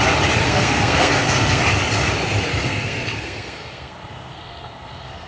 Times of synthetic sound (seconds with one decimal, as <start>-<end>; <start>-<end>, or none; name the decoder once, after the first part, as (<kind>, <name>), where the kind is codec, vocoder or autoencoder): 0.4-1.6 (codec, SNAC); 2.5-5.3